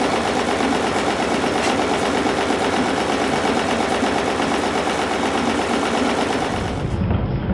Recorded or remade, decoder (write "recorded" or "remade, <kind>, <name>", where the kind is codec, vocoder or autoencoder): recorded